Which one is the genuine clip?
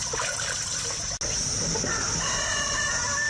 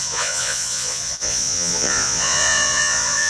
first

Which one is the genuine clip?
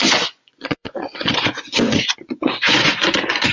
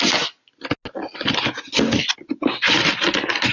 second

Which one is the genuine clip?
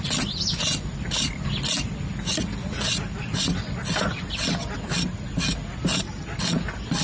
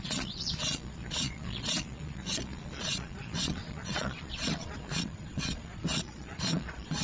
first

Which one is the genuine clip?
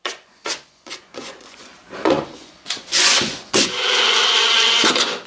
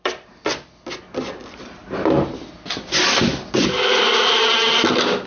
second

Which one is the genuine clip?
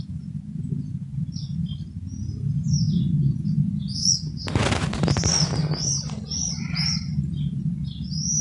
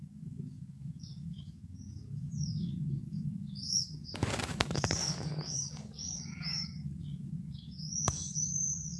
first